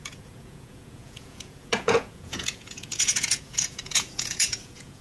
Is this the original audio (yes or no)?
no